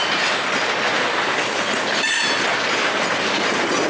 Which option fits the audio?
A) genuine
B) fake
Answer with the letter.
A